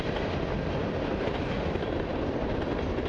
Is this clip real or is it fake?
real